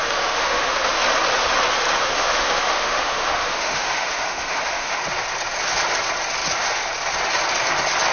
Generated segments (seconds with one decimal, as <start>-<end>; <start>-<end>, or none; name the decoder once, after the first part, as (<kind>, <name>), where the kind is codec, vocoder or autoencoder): 0.0-1.0 (autoencoder, DAC-VAE); 2.0-5.0